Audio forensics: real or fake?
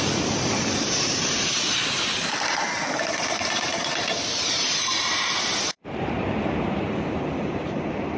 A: fake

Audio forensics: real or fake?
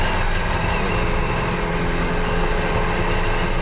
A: real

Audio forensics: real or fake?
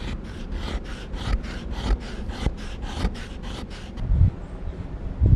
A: real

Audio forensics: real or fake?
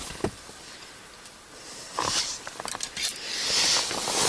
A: real